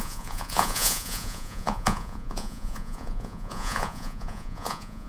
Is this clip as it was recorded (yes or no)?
no